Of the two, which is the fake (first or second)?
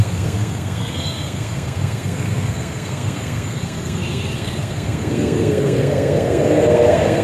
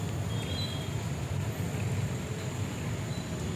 first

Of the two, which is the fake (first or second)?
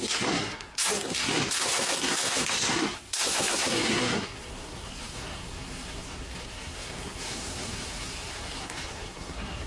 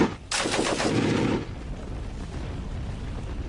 first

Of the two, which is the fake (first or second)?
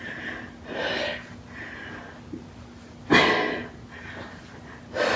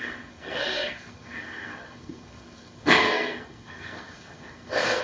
second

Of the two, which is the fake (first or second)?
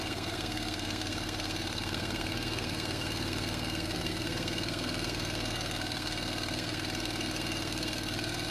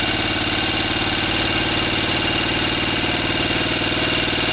first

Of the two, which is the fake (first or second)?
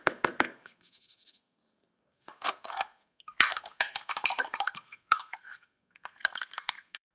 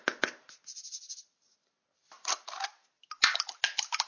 first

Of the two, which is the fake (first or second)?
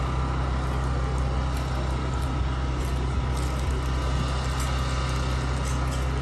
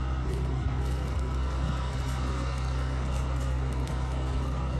second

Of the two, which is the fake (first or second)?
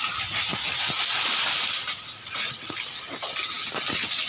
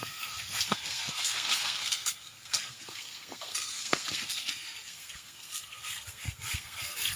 second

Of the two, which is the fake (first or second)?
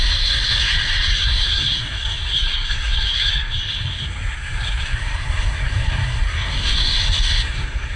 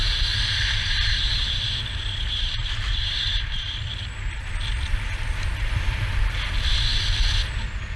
first